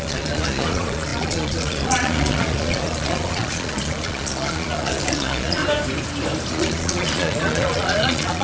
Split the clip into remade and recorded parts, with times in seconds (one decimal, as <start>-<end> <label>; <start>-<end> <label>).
0.0-5.6 remade; 5.6-6.5 recorded; 6.5-8.4 remade